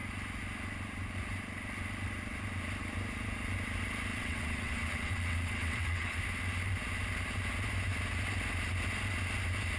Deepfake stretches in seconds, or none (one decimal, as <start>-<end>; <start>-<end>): 4.1-6.2